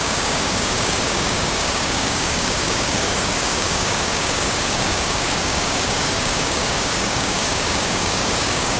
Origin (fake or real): fake